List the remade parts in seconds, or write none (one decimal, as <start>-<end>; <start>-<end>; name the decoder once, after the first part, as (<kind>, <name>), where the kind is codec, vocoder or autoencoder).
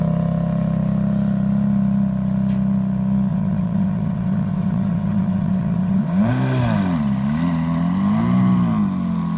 3.3-6.3 (vocoder, WaveNeXt)